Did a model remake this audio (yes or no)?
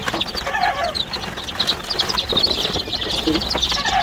no